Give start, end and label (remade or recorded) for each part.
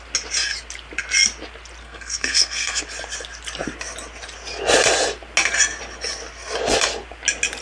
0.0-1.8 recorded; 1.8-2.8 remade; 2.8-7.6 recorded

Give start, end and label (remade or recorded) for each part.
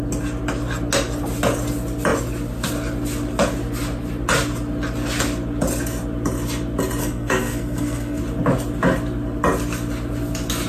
0.0-7.0 recorded; 7.0-8.2 remade; 8.2-10.7 recorded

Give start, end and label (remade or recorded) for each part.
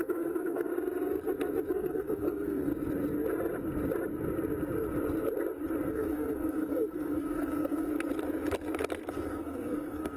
0.0-0.7 remade; 0.7-1.7 recorded; 1.7-2.7 remade; 2.7-5.9 recorded; 5.9-7.9 remade; 7.9-9.1 recorded; 9.1-10.2 remade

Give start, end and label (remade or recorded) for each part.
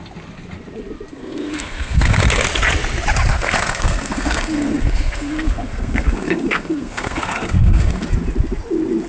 0.0-1.1 recorded; 1.1-2.2 remade; 2.2-3.3 recorded; 3.3-8.1 remade; 8.1-9.1 recorded